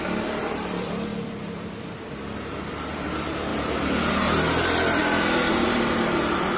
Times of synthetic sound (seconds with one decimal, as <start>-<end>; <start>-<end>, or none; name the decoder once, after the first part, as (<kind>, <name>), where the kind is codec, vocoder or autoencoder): 0.0-3.5 (vocoder, BigVGAN v2); 4.1-5.0; 5.5-6.6